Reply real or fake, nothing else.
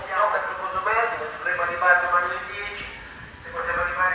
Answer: real